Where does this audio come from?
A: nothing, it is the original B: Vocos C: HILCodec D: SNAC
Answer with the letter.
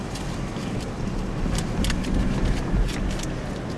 A